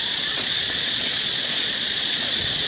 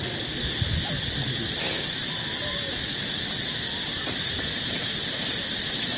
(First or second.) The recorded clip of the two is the second